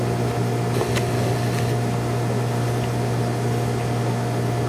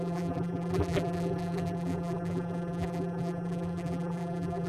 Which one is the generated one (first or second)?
second